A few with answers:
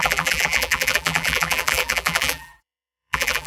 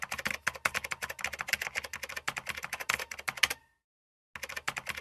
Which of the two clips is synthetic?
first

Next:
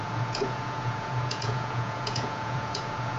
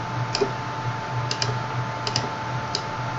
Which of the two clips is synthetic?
first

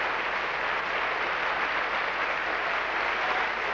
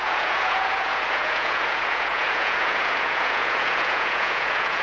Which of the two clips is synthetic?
second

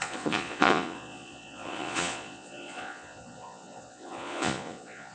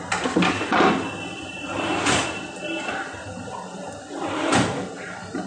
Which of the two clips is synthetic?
first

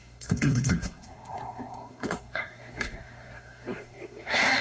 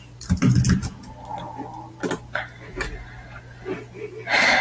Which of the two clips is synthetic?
first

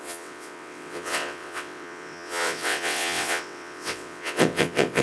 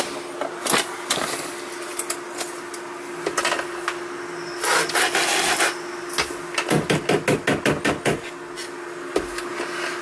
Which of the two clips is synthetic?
first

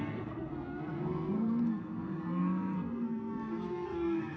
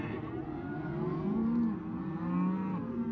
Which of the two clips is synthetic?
first